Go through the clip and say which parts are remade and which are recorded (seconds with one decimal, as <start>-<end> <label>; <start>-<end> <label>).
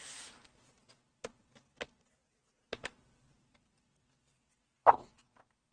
0.0-5.7 recorded